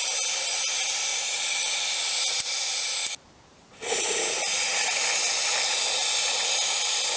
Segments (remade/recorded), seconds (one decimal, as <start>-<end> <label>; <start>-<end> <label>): 0.0-1.1 recorded; 1.1-1.9 remade; 1.9-3.5 recorded; 3.5-4.8 remade; 4.8-7.2 recorded